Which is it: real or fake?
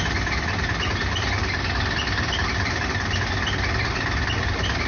real